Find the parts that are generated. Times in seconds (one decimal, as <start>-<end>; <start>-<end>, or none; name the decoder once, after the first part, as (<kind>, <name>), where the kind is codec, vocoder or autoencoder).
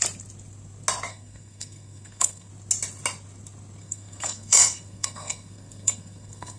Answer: 1.1-2.5 (codec, SNAC); 3.8-6.6